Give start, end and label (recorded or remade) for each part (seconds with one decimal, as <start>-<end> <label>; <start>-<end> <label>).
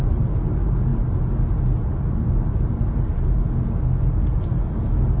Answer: 0.0-5.2 recorded